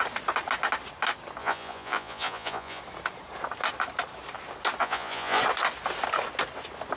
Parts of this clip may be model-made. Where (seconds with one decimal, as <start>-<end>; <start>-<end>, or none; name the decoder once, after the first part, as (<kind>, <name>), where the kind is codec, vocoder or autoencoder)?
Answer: 1.4-2.8 (vocoder, Vocos); 4.8-5.4